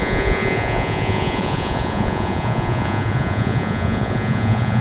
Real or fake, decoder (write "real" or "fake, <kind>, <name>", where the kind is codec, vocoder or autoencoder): fake, vocoder, Vocos